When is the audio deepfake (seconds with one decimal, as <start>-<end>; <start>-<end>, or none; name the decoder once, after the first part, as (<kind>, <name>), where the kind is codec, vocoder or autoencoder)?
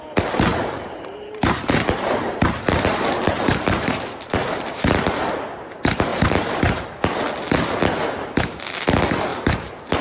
0.5-5.3 (vocoder, BigVGAN v2); 6.1-6.8; 9.3-10.0